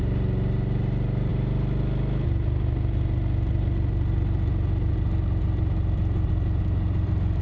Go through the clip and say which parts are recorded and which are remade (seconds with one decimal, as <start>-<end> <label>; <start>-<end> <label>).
0.0-7.4 recorded